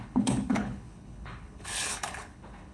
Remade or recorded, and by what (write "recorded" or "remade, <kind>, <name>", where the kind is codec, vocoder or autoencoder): remade, codec, HILCodec